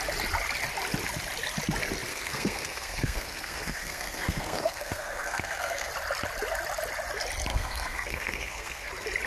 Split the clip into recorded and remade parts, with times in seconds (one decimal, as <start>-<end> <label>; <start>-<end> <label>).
0.0-2.1 recorded; 2.1-5.9 remade; 5.9-7.5 recorded; 7.5-8.9 remade; 8.9-9.3 recorded